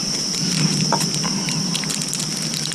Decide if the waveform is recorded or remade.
remade